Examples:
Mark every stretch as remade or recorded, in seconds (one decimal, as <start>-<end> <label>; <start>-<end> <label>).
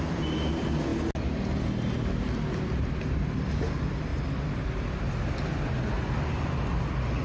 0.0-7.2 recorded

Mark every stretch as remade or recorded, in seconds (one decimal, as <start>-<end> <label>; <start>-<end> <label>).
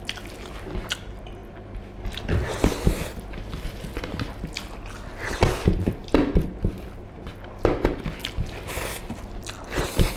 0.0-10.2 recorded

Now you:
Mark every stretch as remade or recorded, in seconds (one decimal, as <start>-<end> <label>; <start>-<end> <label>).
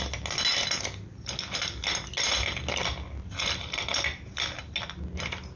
0.0-5.6 recorded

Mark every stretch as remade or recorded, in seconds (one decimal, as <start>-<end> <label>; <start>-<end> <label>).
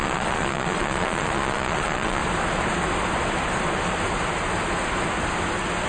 0.0-2.2 remade; 2.2-5.9 recorded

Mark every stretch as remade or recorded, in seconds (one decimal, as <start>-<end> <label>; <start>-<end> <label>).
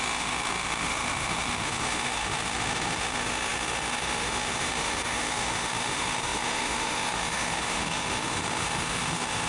0.0-9.5 remade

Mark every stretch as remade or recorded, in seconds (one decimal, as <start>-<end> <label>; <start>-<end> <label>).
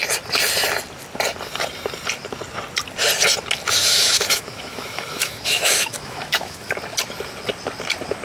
0.0-3.8 recorded; 3.8-6.7 remade; 6.7-8.2 recorded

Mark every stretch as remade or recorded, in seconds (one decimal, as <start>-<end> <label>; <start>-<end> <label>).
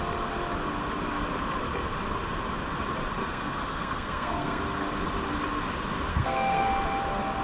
0.0-3.2 recorded; 3.2-4.6 remade; 4.6-6.1 recorded; 6.1-6.7 remade; 6.7-7.4 recorded